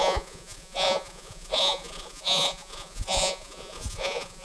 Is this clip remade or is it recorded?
remade